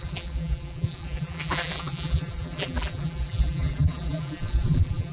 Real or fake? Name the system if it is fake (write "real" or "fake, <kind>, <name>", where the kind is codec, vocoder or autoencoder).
fake, vocoder, BigVGAN v2